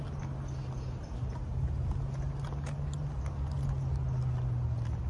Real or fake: real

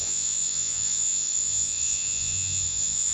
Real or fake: fake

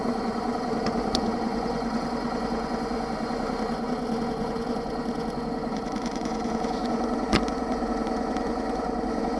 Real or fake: fake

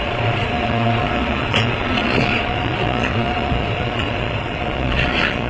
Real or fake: fake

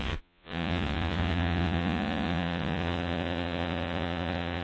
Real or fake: fake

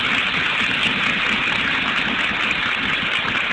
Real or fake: real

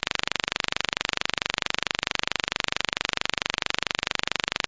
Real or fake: real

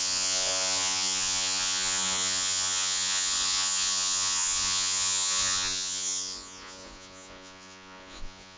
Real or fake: fake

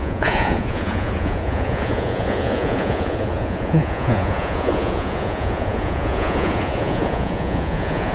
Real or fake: fake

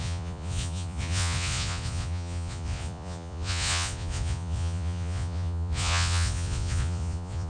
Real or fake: fake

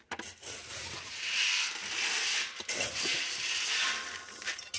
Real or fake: real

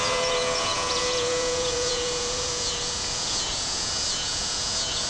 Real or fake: fake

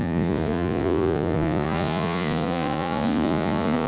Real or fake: fake